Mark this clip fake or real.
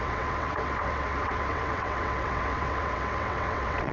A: fake